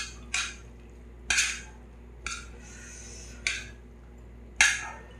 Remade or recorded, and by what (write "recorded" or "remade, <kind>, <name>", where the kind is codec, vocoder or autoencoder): recorded